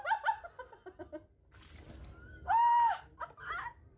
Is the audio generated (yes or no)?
no